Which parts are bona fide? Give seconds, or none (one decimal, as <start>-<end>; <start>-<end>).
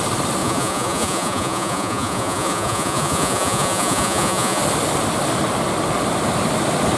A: 0.0-0.4; 4.6-7.0